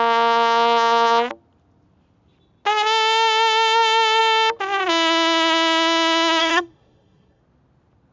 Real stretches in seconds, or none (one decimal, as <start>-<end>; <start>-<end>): 0.0-6.4; 7.4-8.1